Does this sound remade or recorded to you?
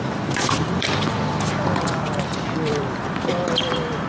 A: remade